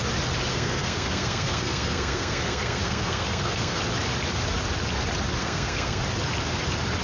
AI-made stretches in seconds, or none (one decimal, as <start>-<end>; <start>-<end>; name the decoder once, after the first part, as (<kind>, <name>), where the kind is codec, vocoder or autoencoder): 0.5-3.8 (codec, SNAC); 5.4-6.0